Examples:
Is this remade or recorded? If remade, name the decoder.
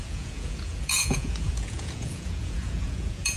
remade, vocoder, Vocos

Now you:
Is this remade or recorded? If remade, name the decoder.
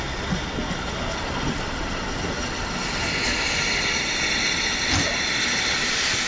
recorded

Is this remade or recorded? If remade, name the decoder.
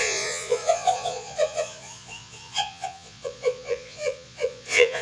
remade, vocoder, Vocos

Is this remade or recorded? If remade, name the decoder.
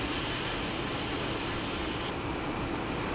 recorded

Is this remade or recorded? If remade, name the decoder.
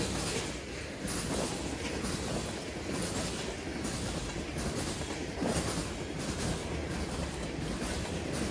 recorded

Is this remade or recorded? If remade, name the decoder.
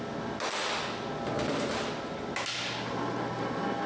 recorded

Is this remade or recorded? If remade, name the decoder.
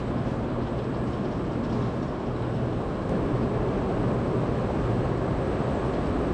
recorded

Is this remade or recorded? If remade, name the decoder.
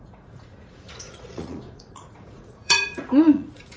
remade, vocoder, Vocos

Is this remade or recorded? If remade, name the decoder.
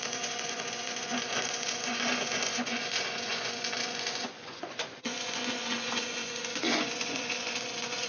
remade, vocoder, Vocos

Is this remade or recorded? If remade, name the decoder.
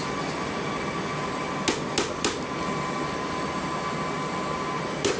recorded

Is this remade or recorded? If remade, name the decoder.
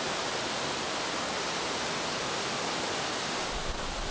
recorded